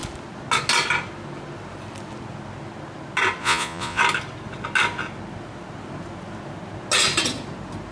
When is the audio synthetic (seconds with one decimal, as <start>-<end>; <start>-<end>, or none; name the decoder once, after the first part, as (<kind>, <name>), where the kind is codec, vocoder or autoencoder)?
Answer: 3.4-4.0 (vocoder, Vocos)

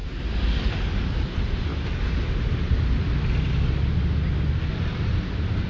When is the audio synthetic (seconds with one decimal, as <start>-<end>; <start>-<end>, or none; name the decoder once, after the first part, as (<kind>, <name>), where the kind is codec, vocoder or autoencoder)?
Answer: 0.7-1.7 (vocoder, BigVGAN v2); 4.7-5.7

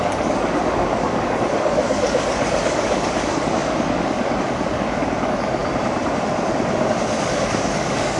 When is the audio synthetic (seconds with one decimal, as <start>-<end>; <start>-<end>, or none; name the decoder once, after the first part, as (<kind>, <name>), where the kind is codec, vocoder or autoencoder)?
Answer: 0.0-5.6 (codec, DAC); 7.2-8.2

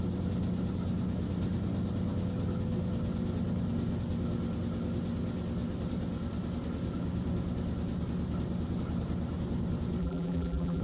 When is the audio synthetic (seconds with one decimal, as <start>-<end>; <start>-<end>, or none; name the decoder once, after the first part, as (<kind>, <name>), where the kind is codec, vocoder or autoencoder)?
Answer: 10.0-10.8 (vocoder, BigVGAN v2)

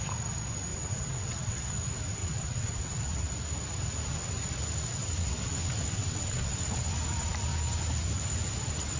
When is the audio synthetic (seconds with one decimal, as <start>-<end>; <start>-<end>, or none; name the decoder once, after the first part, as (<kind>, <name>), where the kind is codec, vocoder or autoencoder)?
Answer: 0.7-1.7 (vocoder, WaveNeXt); 2.2-3.3; 5.0-6.9